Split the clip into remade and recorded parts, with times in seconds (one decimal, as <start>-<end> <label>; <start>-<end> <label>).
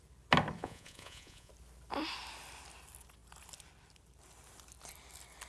0.0-0.6 recorded; 0.6-1.5 remade; 1.5-5.5 recorded